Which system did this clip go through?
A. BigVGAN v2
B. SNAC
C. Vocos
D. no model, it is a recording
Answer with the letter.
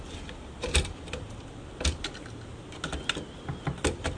D